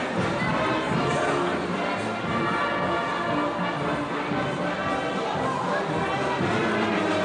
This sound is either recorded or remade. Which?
recorded